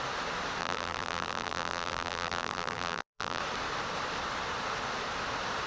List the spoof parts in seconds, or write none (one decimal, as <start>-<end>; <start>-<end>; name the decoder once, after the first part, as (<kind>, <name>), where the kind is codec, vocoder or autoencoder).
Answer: 0.6-3.4 (vocoder, BigVGAN v2)